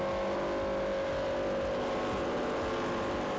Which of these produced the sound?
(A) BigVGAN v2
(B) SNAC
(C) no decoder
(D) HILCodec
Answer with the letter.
C